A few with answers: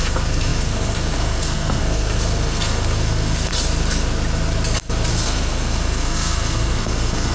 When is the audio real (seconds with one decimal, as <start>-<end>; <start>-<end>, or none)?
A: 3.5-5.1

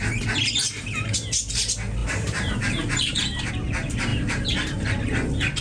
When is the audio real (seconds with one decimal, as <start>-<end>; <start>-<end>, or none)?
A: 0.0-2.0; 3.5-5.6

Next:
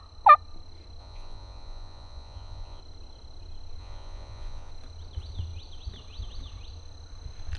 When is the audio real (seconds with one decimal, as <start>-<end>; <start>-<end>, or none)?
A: 0.0-1.0; 2.8-3.8; 4.7-7.6

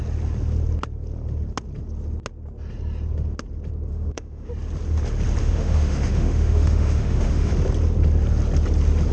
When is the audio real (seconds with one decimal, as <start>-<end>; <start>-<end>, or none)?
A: 0.0-3.9; 4.5-5.4; 7.5-9.1